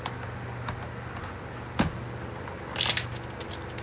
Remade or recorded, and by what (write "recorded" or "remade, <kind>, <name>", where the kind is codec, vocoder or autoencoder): recorded